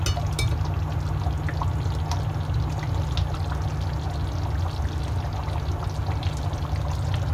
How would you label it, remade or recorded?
recorded